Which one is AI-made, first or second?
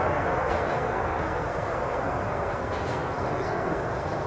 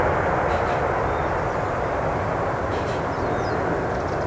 first